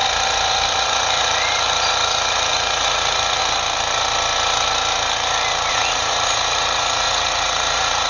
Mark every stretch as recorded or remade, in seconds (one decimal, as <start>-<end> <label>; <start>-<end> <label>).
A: 0.0-0.8 recorded; 0.8-3.4 remade; 3.4-5.7 recorded; 5.7-8.1 remade